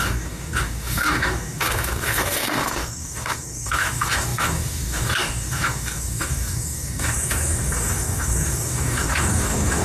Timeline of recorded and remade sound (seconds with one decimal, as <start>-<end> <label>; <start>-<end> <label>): 0.0-9.8 remade